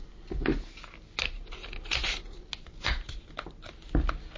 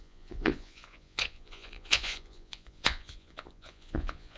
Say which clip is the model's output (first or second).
second